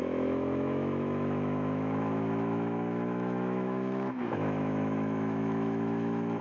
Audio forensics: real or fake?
fake